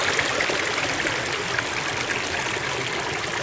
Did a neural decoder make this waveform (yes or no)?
no